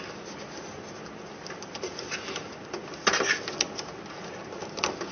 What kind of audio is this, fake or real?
real